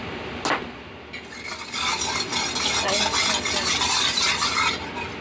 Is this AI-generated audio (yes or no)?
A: no